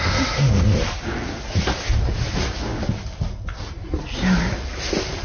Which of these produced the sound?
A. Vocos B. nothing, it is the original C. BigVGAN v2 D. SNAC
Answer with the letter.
B